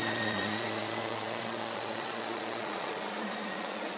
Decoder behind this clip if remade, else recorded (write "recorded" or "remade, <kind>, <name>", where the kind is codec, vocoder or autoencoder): remade, vocoder, Vocos